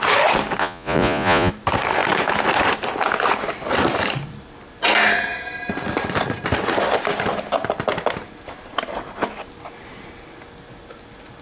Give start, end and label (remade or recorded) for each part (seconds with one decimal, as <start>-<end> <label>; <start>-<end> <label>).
0.0-0.6 recorded; 0.6-1.5 remade; 1.5-11.4 recorded